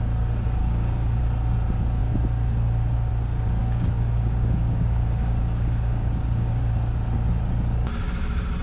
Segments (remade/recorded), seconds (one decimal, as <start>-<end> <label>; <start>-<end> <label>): 0.0-0.6 recorded; 0.6-1.2 remade; 1.2-3.6 recorded; 3.6-6.6 remade; 6.6-8.6 recorded